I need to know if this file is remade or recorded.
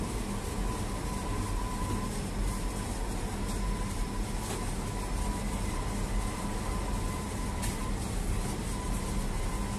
recorded